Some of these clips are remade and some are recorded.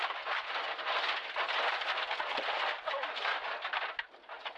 recorded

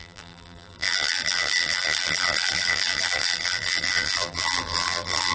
remade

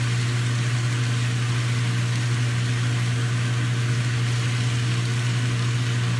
recorded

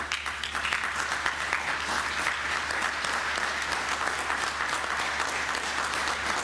recorded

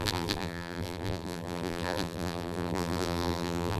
remade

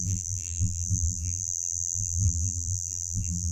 remade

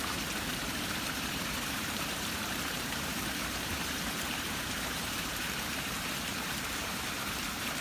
remade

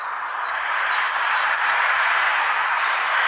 remade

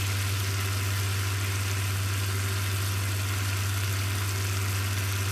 recorded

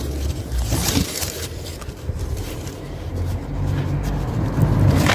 remade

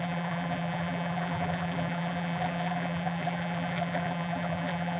remade